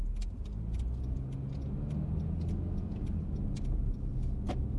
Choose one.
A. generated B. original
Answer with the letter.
B